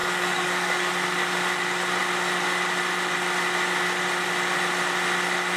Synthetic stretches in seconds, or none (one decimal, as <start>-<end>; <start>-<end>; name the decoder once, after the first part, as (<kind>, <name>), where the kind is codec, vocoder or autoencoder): 0.0-0.9 (codec, DAC)